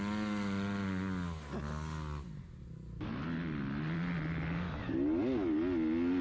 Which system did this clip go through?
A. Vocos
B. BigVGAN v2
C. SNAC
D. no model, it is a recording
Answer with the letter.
D